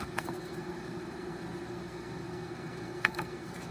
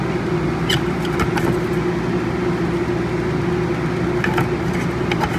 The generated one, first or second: first